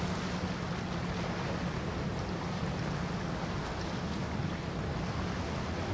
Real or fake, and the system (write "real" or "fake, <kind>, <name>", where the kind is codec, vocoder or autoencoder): real